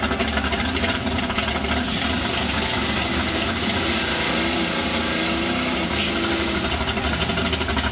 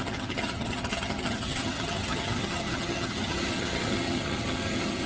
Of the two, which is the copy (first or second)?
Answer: second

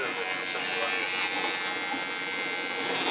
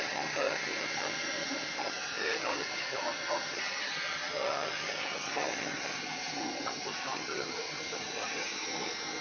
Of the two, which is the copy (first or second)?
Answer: second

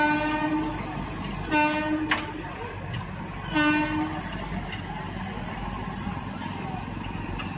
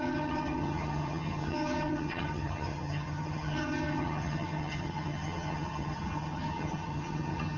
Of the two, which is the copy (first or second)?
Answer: second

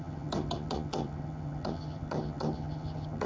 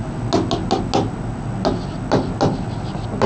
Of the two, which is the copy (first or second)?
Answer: first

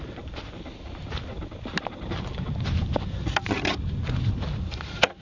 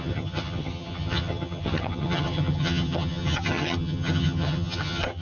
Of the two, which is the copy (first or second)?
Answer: second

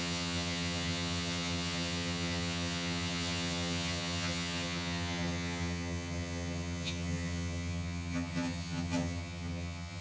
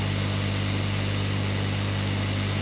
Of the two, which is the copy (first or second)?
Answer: first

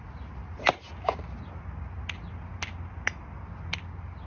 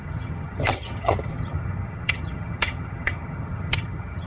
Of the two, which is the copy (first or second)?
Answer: second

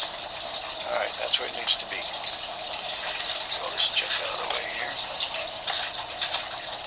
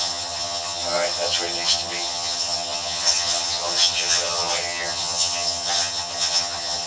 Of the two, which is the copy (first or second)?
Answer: second